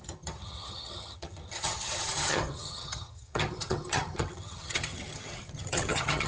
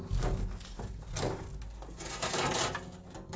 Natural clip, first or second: second